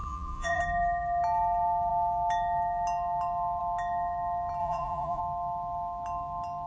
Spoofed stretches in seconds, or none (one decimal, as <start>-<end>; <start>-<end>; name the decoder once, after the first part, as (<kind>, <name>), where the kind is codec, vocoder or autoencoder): 0.0-0.6 (vocoder, Vocos); 4.6-5.2